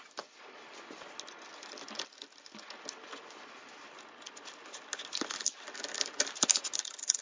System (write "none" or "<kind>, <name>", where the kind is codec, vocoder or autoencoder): none